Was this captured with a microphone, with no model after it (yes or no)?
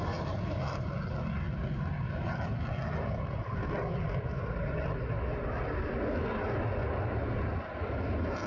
yes